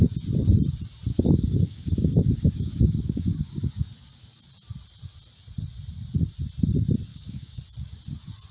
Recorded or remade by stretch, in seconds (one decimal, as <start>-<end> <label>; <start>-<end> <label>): 0.0-1.1 recorded; 1.1-4.4 remade; 4.4-7.1 recorded; 7.1-7.6 remade; 7.6-8.5 recorded